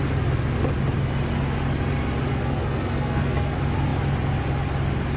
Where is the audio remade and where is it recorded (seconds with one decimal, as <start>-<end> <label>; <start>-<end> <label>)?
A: 0.0-2.3 recorded; 2.3-3.5 remade; 3.5-5.2 recorded